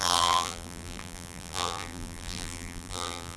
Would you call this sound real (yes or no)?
no